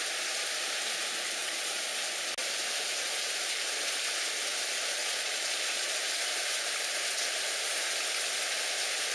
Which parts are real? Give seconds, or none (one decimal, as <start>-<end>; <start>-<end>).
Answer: 0.0-1.4; 2.0-5.0; 6.0-9.1